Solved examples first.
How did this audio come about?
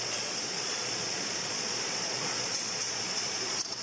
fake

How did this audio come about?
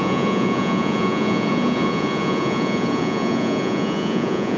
fake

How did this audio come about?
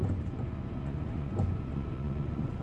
fake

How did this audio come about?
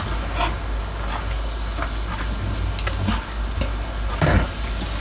real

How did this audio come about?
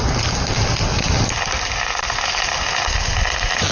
real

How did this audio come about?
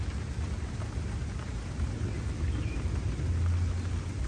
real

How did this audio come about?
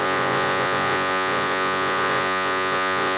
fake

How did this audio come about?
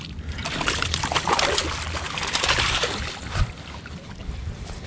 real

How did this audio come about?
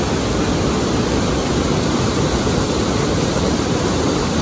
real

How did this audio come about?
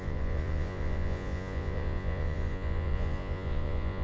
fake